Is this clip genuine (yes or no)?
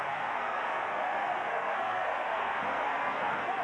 no